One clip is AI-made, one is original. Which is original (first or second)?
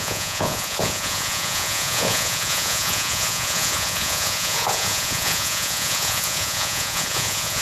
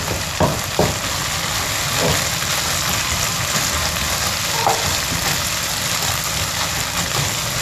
second